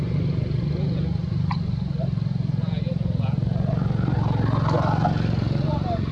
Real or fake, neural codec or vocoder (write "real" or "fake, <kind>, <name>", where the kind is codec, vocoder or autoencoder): real